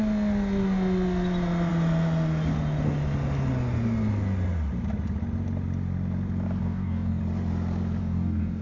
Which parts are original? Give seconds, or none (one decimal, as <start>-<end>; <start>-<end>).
0.0-6.6; 7.2-8.0

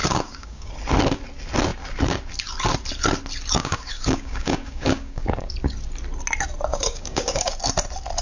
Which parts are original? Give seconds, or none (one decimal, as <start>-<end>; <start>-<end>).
0.7-3.6; 5.5-6.7; 7.5-8.2

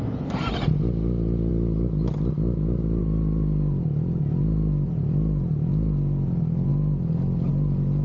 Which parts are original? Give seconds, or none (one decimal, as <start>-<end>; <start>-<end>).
0.0-8.0

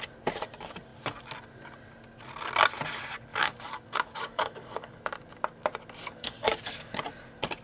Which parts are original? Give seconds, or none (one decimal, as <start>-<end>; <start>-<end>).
0.0-3.3; 5.0-6.0; 7.0-7.6

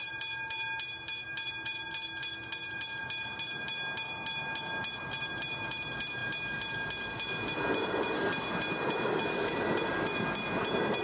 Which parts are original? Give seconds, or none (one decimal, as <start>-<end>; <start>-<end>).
0.0-11.0

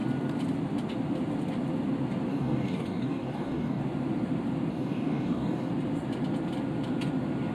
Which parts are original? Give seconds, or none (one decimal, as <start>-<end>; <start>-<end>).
0.0-2.3; 3.8-4.7; 5.7-7.5

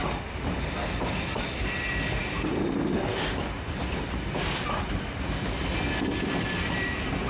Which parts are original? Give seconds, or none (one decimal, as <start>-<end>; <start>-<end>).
0.0-7.3